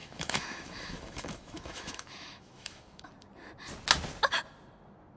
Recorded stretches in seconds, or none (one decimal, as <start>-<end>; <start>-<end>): 3.1-5.2